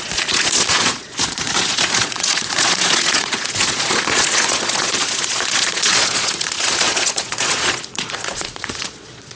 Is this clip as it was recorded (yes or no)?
no